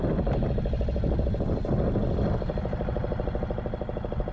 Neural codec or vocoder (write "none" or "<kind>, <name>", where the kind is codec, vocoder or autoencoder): none